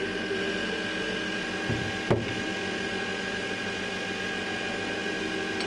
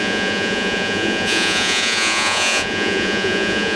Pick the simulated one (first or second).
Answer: second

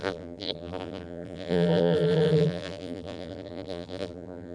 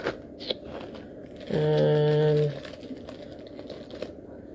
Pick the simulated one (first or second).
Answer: first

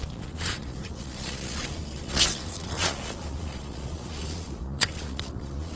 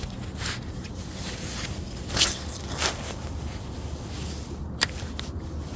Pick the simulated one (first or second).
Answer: first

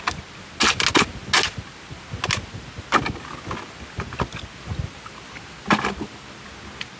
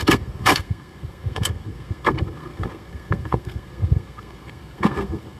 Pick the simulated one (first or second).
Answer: second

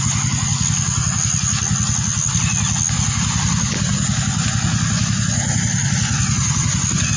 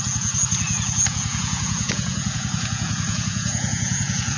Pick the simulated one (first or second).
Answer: second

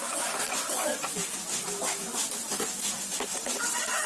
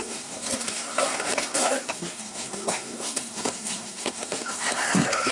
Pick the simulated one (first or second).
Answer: second